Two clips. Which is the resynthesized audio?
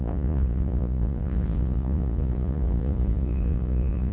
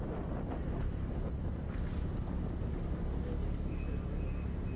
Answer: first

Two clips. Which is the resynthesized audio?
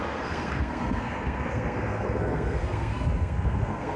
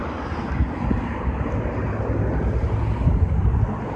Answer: first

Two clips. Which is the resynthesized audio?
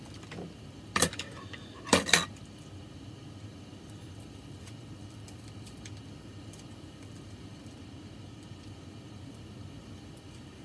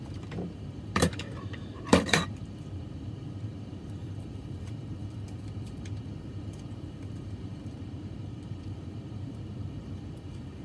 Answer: second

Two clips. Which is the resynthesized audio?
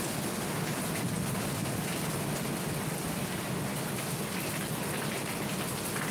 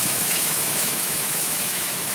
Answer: second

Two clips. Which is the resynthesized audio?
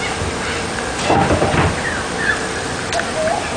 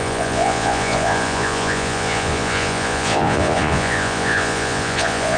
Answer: second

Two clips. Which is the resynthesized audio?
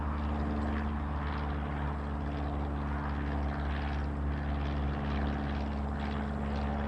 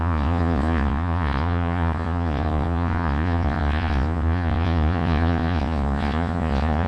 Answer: second